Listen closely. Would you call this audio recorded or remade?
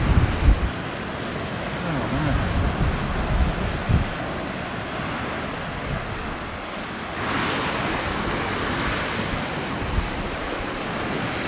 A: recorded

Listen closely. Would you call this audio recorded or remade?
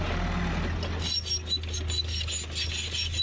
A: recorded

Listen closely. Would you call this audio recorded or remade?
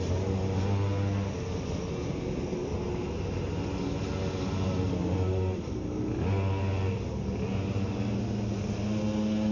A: recorded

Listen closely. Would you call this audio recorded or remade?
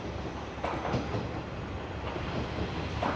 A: recorded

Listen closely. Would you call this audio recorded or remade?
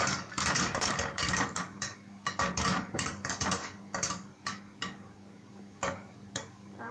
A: remade